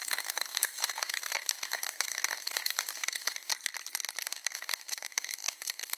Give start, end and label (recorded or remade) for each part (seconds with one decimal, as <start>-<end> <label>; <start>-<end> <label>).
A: 0.0-3.5 remade; 3.5-4.2 recorded; 4.2-6.0 remade